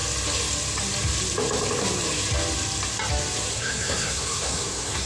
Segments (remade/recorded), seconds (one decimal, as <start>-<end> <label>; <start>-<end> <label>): 0.0-3.5 recorded; 3.5-5.1 remade